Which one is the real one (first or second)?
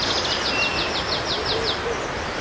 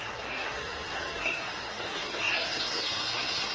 first